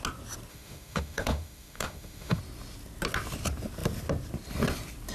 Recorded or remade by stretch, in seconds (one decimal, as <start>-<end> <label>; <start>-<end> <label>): 0.0-0.5 recorded; 0.5-2.4 remade; 2.4-5.1 recorded